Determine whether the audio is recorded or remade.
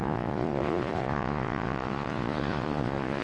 remade